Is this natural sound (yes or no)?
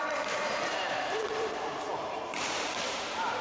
no